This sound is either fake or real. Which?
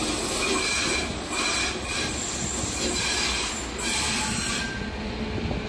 real